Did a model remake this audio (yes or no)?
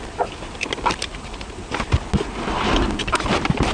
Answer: no